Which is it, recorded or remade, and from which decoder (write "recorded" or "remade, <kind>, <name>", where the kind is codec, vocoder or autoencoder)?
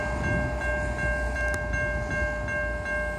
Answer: recorded